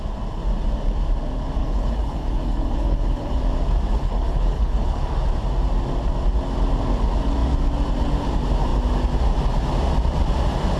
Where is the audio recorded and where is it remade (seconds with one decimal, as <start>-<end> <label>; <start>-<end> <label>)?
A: 0.0-1.6 recorded; 1.6-3.4 remade; 3.4-3.9 recorded; 3.9-5.0 remade; 5.0-10.8 recorded